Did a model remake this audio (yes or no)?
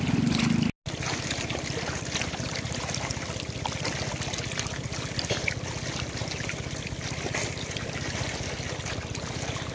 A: no